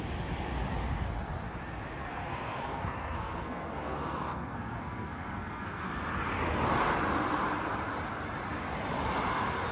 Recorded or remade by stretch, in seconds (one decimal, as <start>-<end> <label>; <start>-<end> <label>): 0.0-2.0 recorded; 2.0-5.9 remade; 5.9-9.7 recorded